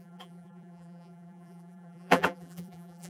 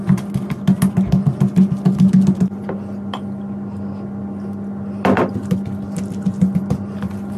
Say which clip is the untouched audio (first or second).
second